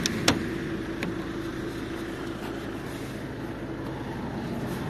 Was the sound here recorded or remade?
recorded